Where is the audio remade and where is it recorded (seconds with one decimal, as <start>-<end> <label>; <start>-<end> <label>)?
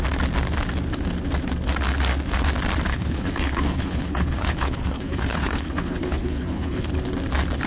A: 0.0-2.9 recorded; 2.9-6.9 remade; 6.9-7.7 recorded